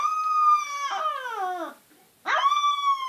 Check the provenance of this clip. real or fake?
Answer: real